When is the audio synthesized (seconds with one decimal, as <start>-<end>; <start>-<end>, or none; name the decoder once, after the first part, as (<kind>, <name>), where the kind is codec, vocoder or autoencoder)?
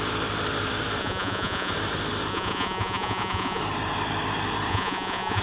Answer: 1.0-1.7 (vocoder, Vocos); 2.3-3.6; 4.7-5.4